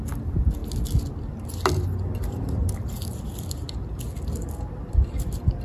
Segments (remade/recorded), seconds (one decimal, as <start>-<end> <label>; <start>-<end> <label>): 0.0-5.6 recorded